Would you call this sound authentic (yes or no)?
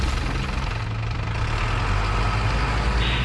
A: yes